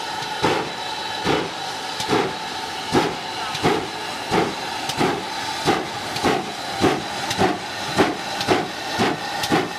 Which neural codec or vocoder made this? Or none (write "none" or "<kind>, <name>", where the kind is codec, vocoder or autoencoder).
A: none